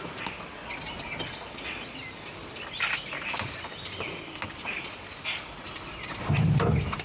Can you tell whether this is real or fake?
real